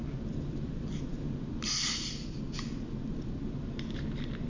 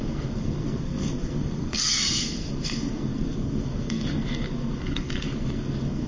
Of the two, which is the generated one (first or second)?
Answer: second